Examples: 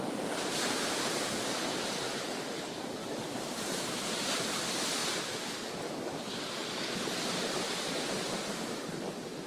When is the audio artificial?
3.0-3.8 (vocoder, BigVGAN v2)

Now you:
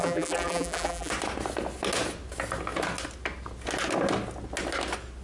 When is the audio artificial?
0.0-1.1 (vocoder, BigVGAN v2)

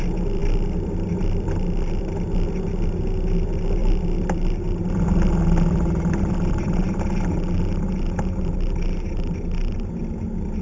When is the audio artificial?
none

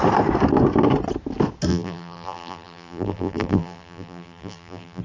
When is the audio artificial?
1.7-5.0 (vocoder, BigVGAN v2)